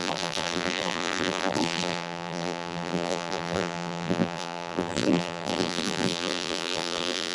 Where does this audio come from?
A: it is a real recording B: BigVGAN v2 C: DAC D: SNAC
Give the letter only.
B